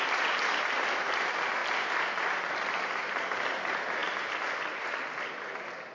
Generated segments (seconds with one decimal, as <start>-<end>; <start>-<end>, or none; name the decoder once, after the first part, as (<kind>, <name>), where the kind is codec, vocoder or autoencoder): none